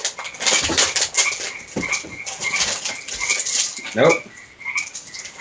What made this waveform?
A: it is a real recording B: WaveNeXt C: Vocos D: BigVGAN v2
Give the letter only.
A